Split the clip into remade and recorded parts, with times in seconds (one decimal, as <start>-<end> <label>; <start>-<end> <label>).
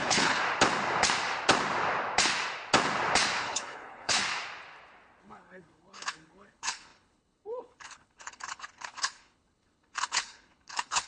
0.0-0.4 remade; 0.4-3.4 recorded; 3.4-4.2 remade; 4.2-5.2 recorded; 5.2-11.1 remade